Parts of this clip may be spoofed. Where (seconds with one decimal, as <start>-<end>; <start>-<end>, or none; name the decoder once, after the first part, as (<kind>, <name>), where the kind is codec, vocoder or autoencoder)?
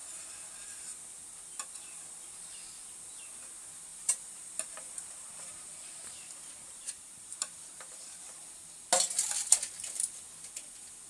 3.9-8.7 (vocoder, BigVGAN v2)